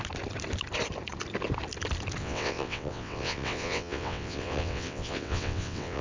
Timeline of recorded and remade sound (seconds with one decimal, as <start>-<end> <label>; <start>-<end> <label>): 0.0-2.2 recorded; 2.2-6.0 remade

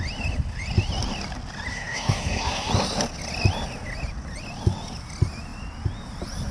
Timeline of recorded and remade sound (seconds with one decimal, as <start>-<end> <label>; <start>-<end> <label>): 0.0-1.7 recorded; 1.7-2.7 remade; 2.7-6.5 recorded